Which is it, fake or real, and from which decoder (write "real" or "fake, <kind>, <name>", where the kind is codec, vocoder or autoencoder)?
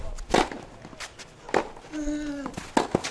real